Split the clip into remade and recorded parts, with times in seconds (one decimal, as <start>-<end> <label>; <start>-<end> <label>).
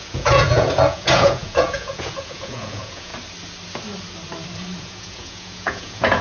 0.0-3.1 remade; 3.1-4.8 recorded; 4.8-6.2 remade